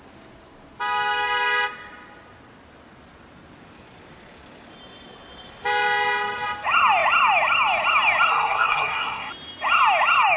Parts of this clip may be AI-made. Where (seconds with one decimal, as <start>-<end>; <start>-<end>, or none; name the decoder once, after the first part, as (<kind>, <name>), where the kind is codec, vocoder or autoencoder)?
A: 8.3-9.3 (codec, SNAC)